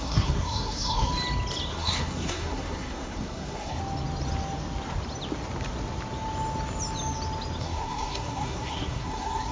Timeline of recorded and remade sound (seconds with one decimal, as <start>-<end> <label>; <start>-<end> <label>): 0.0-1.1 remade; 1.1-1.7 recorded; 1.7-3.8 remade; 3.8-7.6 recorded; 7.6-9.5 remade